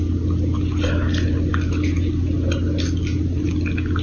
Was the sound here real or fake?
real